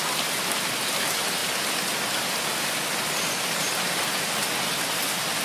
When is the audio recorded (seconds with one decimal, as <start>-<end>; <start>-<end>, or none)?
0.0-5.4